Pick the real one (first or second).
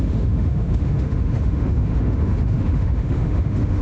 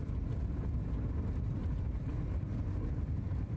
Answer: second